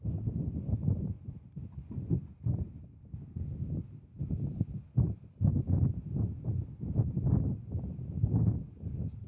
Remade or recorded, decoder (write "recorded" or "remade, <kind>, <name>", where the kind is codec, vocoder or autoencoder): recorded